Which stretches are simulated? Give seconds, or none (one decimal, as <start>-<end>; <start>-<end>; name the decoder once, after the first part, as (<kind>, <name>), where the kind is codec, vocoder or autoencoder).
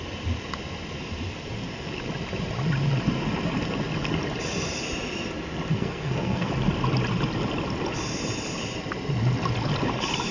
5.7-6.5 (codec, SNAC)